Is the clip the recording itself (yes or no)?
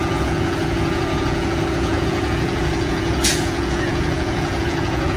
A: no